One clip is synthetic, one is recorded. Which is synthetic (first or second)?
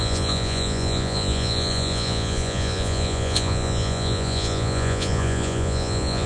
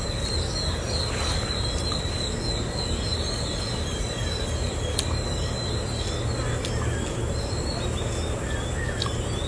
first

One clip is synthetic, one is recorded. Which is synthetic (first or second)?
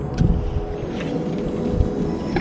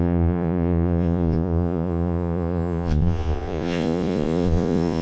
second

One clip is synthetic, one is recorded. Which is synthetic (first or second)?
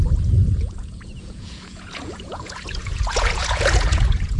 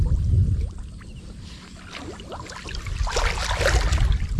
first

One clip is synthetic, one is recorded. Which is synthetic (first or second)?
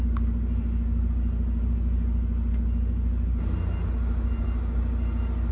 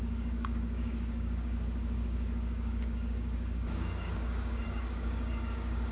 second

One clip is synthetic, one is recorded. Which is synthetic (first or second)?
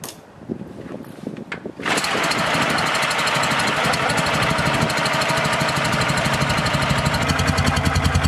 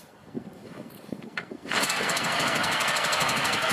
second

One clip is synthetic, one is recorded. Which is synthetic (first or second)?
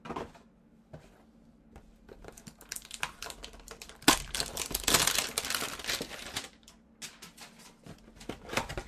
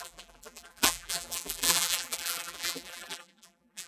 second